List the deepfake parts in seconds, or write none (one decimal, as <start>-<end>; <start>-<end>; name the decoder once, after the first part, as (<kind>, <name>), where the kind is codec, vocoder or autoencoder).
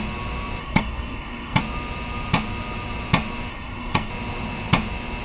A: 0.6-1.6 (codec, SNAC); 3.5-4.1